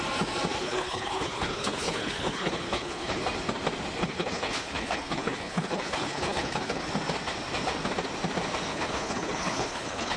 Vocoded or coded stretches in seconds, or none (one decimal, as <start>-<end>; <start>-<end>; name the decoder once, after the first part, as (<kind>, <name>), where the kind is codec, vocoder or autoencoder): 0.6-3.2 (codec, HILCodec); 4.0-6.9; 8.7-10.2

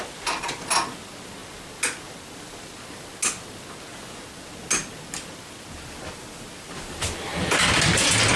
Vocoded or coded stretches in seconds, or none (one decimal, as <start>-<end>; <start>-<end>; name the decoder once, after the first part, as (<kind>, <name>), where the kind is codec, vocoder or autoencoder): none

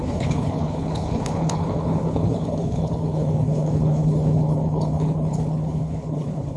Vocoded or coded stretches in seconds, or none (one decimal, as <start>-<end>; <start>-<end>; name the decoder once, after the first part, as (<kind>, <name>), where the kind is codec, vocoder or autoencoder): 0.0-6.6 (codec, HILCodec)